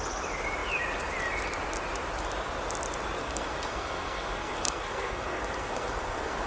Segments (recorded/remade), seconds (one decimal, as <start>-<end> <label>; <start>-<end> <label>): 0.0-3.2 recorded; 3.2-6.5 remade